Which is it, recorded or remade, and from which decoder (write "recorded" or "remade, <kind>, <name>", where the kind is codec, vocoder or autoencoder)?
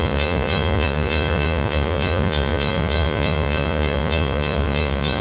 remade, vocoder, Vocos